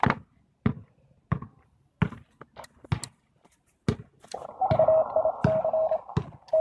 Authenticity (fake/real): real